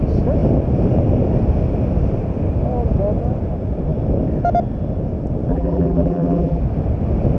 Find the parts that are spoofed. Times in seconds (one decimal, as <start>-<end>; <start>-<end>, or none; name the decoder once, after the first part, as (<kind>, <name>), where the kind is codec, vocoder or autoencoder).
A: 5.5-6.6 (vocoder, BigVGAN v2)